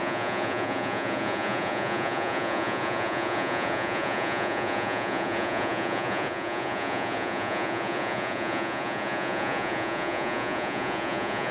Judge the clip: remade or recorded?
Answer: remade